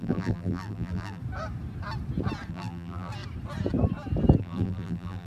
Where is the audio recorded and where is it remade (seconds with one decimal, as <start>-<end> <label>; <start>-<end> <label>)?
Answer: 0.0-1.2 remade; 1.2-2.5 recorded; 2.5-3.1 remade; 3.1-4.4 recorded; 4.4-5.3 remade